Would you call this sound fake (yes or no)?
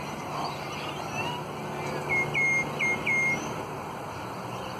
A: no